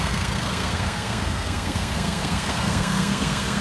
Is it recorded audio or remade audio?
remade